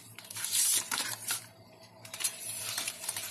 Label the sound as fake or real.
fake